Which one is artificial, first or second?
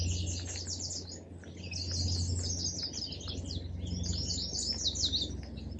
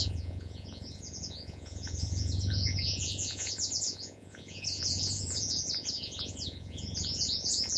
second